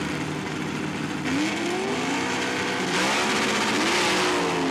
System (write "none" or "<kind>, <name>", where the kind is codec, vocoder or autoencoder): none